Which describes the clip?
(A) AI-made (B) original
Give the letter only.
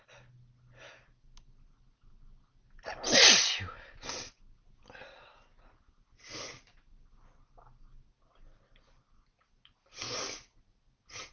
B